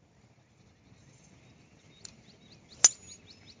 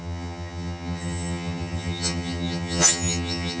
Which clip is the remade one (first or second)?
second